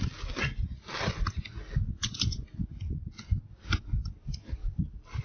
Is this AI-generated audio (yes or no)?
no